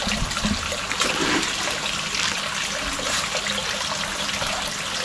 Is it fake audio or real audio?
real